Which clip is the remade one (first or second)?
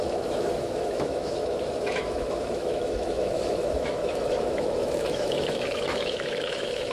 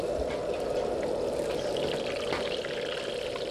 first